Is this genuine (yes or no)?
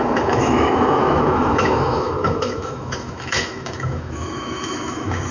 no